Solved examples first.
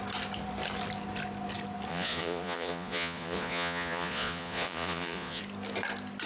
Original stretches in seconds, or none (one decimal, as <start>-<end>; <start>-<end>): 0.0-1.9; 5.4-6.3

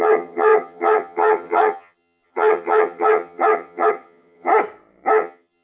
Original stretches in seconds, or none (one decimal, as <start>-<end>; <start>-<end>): 4.5-5.1

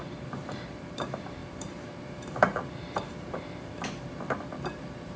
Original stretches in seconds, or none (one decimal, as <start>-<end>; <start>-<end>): none

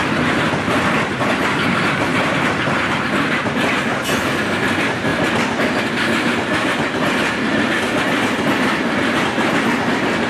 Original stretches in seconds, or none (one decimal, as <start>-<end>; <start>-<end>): 0.0-10.3